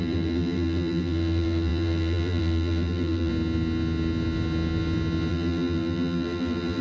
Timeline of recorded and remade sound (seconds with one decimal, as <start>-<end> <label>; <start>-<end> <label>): 0.0-3.3 remade; 3.3-5.3 recorded; 5.3-6.8 remade

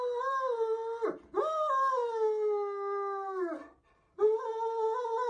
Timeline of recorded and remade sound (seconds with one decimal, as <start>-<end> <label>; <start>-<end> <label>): 0.0-5.3 recorded

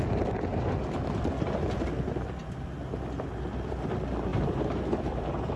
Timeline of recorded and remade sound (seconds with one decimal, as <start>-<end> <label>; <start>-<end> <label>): 0.0-4.3 recorded; 4.3-5.6 remade

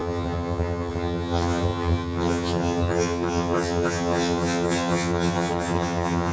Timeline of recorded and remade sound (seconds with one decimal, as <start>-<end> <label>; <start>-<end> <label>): 0.0-6.3 remade

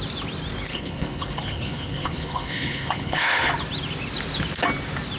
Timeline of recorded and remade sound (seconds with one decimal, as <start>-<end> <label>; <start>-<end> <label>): 0.0-0.7 recorded; 0.7-3.5 remade; 3.5-5.2 recorded